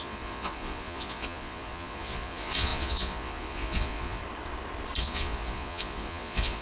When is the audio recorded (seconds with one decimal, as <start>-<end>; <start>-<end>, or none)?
4.2-5.0